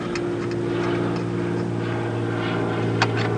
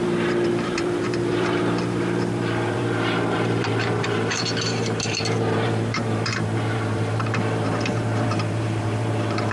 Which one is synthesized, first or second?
second